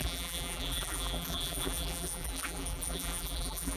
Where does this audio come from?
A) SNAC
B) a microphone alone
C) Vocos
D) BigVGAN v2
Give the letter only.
D